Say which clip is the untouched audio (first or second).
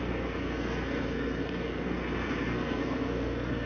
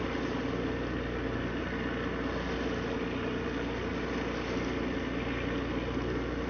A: second